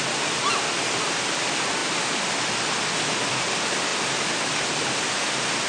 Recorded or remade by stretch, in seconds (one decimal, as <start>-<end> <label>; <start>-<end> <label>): 0.0-1.8 remade; 1.8-2.9 recorded; 2.9-3.9 remade; 3.9-4.5 recorded; 4.5-5.7 remade